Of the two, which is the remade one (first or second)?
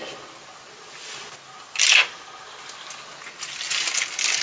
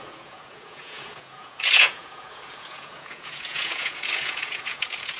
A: second